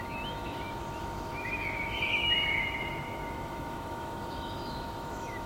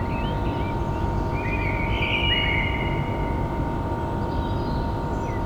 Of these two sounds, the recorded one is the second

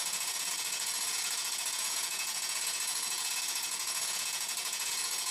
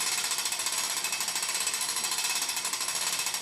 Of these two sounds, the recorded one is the second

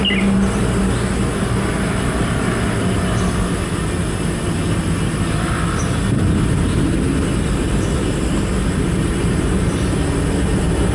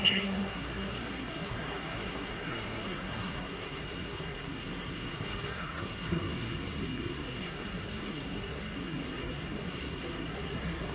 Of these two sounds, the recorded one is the first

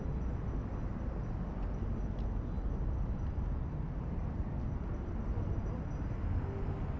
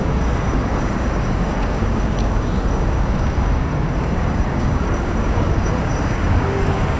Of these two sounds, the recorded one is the first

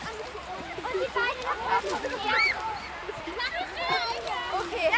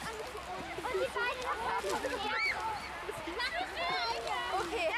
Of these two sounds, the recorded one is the second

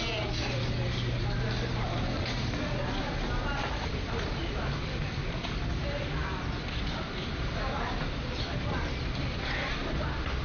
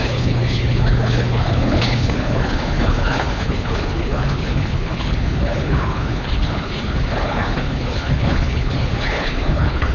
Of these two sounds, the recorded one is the first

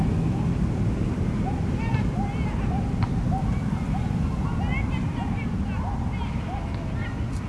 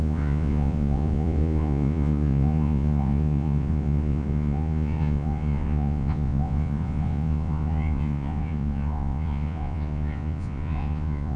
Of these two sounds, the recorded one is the first